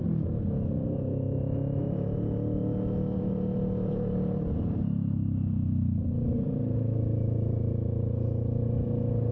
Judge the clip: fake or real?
real